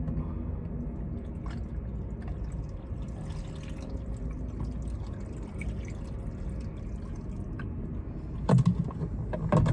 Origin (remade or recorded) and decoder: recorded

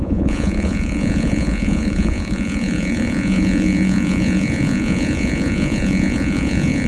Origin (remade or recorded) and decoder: remade, vocoder, Vocos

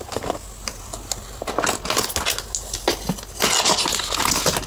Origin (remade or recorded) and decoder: recorded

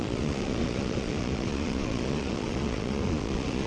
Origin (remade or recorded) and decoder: remade, vocoder, Vocos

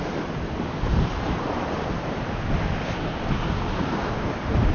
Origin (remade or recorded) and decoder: recorded